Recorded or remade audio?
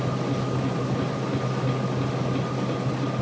recorded